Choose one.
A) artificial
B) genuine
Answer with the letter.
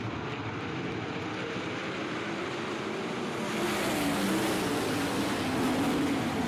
B